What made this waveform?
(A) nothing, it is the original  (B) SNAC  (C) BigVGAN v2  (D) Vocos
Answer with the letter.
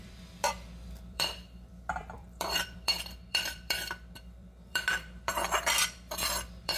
C